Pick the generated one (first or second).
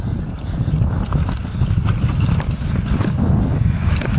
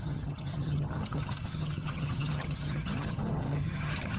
second